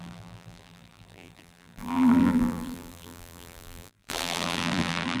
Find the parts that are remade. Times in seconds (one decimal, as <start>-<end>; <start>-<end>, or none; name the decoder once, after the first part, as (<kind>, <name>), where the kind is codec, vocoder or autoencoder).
0.0-5.2 (vocoder, BigVGAN v2)